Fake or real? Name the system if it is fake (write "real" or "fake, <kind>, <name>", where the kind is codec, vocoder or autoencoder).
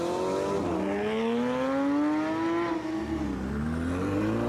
real